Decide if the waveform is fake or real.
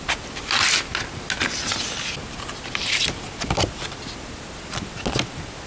real